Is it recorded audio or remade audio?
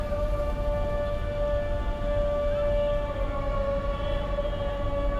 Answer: recorded